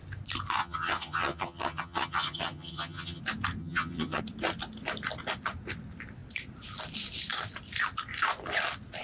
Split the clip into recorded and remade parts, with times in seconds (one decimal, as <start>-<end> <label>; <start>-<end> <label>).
0.0-0.6 recorded; 0.6-3.2 remade; 3.2-3.6 recorded; 3.6-4.2 remade; 4.2-9.0 recorded